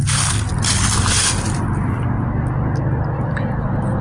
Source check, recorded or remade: recorded